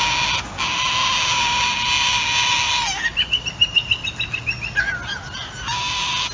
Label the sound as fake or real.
real